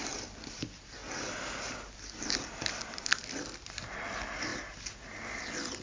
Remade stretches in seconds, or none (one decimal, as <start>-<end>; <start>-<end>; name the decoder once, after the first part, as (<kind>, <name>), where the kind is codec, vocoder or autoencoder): none